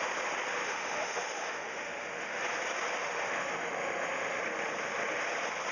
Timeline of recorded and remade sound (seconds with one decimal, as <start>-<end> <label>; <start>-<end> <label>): 0.0-0.5 recorded; 0.5-2.4 remade; 2.4-3.0 recorded; 3.0-4.4 remade; 4.4-5.7 recorded